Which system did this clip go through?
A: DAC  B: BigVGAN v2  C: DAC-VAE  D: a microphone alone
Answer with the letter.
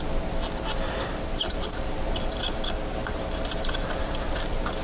D